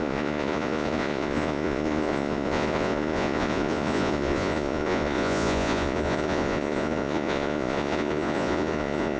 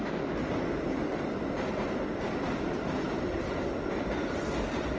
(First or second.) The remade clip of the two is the first